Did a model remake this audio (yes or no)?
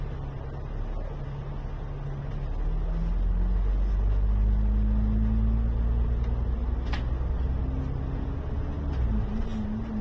no